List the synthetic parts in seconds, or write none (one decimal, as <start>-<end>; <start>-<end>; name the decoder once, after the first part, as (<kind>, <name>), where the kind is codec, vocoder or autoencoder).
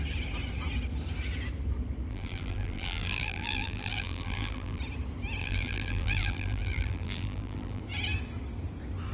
2.1-4.8 (vocoder, BigVGAN v2); 5.4-7.8